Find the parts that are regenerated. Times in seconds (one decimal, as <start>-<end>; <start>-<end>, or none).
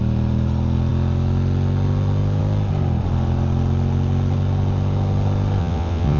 5.6-6.2